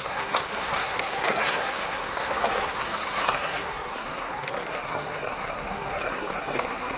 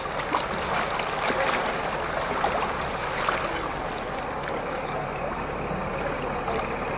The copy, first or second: first